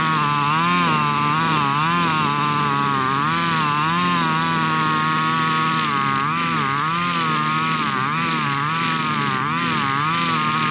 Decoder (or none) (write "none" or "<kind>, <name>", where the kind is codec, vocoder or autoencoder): none